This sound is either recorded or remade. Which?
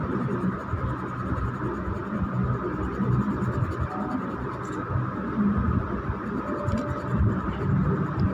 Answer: remade